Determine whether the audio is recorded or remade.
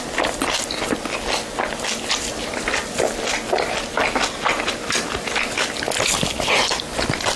recorded